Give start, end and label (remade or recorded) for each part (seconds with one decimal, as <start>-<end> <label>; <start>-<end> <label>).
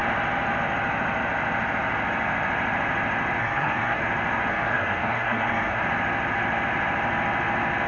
0.0-3.4 recorded; 3.4-4.0 remade; 4.0-4.5 recorded; 4.5-5.8 remade; 5.8-7.9 recorded